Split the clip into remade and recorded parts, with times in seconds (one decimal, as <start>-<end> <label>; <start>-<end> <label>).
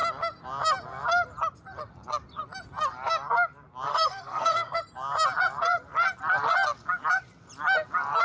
0.0-3.9 recorded; 3.9-4.8 remade; 4.8-8.2 recorded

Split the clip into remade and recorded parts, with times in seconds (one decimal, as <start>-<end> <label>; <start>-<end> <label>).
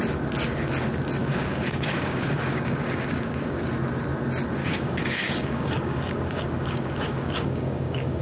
0.0-1.2 recorded; 1.2-3.7 remade; 3.7-4.6 recorded; 4.6-8.2 remade